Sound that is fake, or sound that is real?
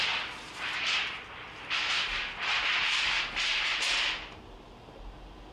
real